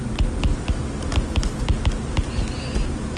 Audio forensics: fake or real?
real